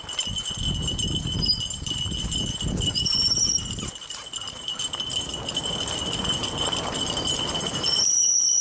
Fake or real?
real